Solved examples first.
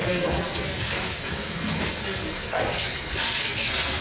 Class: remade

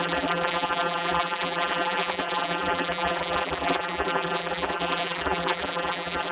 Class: remade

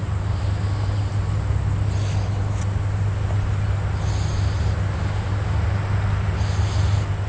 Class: recorded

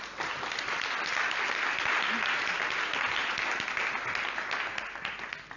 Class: recorded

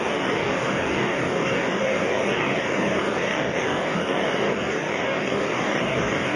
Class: remade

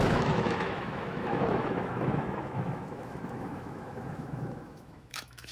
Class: remade